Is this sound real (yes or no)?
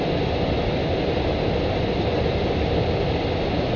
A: yes